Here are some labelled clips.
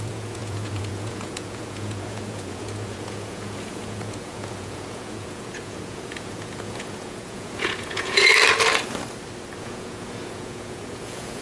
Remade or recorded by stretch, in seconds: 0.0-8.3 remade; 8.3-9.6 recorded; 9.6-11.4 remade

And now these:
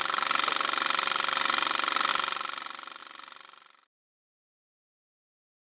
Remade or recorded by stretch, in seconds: 0.0-5.7 recorded